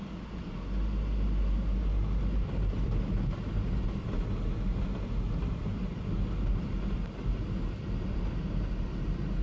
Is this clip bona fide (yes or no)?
yes